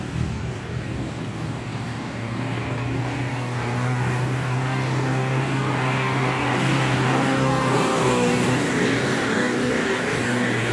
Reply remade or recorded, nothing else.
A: remade